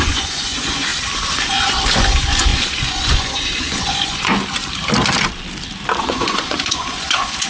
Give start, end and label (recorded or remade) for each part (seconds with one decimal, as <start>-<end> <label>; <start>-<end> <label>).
0.0-0.9 remade; 0.9-1.4 recorded; 1.4-4.3 remade; 4.3-6.0 recorded; 6.0-7.5 remade